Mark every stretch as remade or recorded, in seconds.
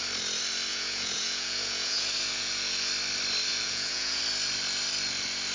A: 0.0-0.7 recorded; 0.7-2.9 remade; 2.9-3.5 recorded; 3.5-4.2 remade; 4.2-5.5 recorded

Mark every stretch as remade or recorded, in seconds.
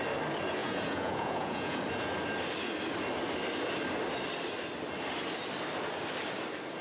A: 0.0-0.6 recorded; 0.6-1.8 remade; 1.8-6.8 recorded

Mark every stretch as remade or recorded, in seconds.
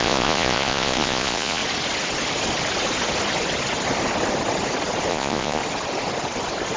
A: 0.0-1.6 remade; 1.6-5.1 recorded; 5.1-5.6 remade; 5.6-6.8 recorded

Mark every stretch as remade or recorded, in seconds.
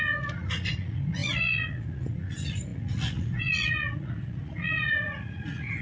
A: 0.0-5.8 remade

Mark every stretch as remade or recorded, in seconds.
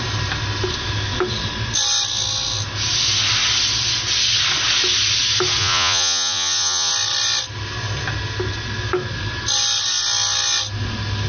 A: 0.0-5.6 recorded; 5.6-6.9 remade; 6.9-11.3 recorded